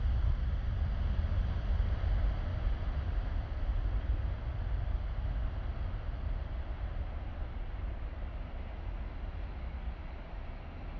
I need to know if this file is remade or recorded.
recorded